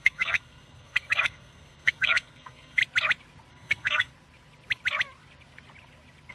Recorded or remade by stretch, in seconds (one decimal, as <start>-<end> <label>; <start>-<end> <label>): 0.0-2.8 remade; 2.8-3.5 recorded; 3.5-4.1 remade; 4.1-6.3 recorded